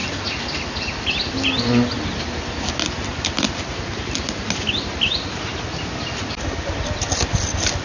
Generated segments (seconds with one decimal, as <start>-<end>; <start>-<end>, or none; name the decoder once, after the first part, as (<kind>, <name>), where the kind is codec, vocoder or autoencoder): none